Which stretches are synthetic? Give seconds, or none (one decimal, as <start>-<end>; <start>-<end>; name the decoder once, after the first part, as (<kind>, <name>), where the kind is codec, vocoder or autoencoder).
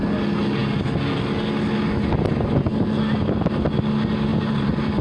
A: 4.3-5.0 (vocoder, BigVGAN v2)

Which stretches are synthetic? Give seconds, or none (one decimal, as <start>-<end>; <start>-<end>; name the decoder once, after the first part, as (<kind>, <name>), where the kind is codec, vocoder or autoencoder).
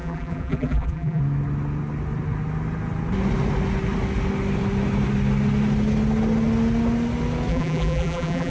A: 0.0-1.2 (vocoder, BigVGAN v2); 7.5-8.5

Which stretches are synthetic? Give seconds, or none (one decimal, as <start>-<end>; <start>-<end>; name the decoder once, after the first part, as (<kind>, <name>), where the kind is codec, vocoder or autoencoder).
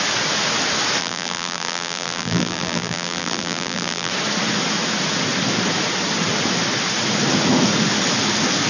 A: 1.0-4.1 (vocoder, BigVGAN v2)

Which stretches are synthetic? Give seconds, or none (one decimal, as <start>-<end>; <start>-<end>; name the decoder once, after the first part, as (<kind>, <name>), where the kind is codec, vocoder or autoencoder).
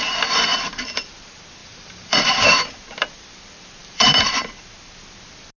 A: 0.5-1.1 (vocoder, BigVGAN v2); 1.6-2.3; 3.8-4.3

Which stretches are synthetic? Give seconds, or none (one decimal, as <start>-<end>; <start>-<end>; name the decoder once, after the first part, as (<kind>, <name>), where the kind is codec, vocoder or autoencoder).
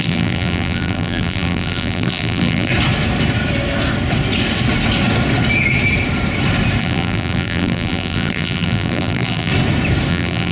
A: 0.0-2.7 (vocoder, BigVGAN v2); 6.8-9.5; 10.1-10.5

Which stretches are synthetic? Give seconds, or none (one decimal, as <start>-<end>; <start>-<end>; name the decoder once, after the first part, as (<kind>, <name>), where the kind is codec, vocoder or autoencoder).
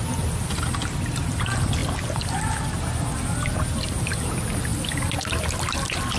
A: none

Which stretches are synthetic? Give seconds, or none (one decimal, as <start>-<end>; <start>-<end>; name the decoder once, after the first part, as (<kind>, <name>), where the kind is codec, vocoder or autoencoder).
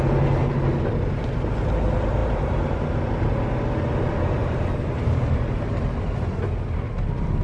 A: 4.4-5.6 (vocoder, BigVGAN v2)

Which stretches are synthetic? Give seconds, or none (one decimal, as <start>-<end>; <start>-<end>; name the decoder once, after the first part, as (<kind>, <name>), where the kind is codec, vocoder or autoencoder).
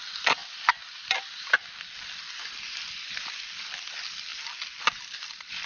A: 0.4-2.8 (vocoder, BigVGAN v2); 4.3-5.7